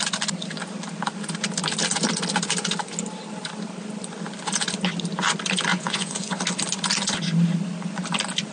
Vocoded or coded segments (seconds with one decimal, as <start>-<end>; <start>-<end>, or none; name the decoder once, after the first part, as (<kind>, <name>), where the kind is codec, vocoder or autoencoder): 5.7-6.4 (vocoder, Vocos)